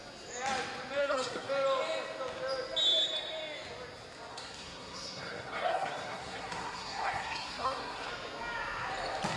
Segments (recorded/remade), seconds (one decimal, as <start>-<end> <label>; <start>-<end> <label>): 0.0-1.0 recorded; 1.0-1.5 remade; 1.5-4.3 recorded; 4.3-8.1 remade; 8.1-9.4 recorded